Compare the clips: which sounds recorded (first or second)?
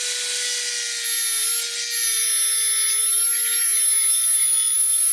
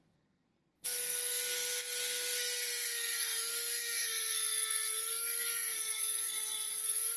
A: first